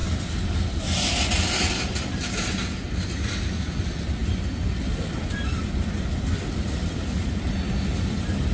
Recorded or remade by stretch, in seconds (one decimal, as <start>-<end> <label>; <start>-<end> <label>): 0.0-8.5 recorded